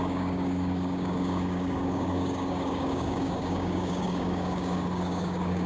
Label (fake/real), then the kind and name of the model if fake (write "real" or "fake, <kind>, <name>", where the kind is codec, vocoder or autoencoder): fake, codec, DAC